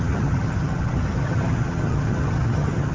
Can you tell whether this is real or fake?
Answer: fake